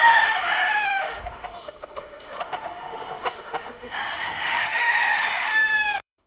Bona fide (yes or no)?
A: no